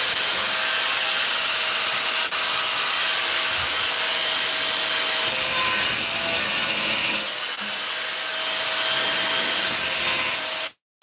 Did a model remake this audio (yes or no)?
no